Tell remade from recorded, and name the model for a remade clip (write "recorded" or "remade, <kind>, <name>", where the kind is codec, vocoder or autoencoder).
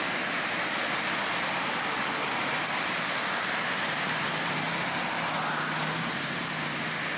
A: recorded